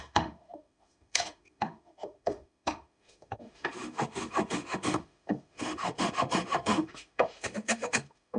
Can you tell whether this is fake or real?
fake